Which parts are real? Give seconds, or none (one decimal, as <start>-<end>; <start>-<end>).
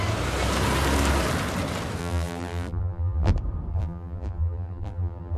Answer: 0.0-2.0; 3.3-3.7